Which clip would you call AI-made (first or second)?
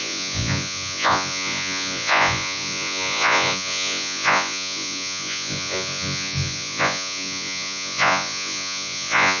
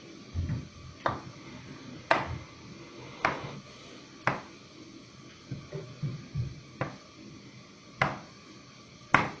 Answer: first